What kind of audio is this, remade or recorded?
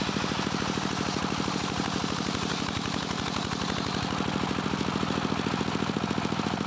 recorded